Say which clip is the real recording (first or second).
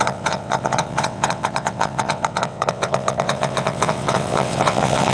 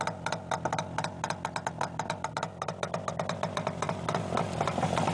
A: second